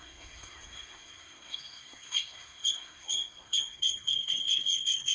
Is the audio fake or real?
fake